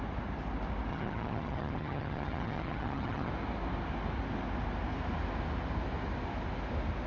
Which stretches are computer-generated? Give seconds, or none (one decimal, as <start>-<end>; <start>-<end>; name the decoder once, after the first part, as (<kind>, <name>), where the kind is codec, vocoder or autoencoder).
0.9-3.3 (vocoder, HiFi-GAN)